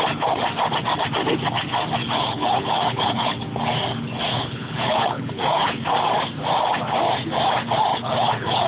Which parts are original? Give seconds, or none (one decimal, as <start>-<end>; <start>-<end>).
0.0-2.0; 3.4-4.3; 5.8-7.9